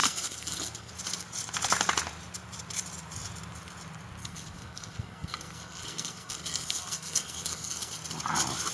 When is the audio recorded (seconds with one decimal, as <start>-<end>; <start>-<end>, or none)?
0.9-4.2; 7.9-8.7